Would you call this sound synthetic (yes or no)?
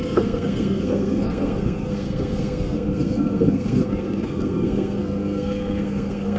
yes